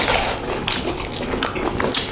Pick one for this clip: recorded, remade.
recorded